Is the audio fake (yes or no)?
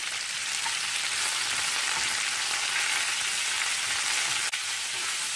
no